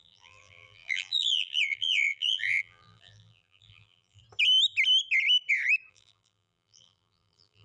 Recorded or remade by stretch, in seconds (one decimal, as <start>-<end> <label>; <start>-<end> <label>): 0.0-4.2 remade; 4.2-5.9 recorded; 5.9-7.6 remade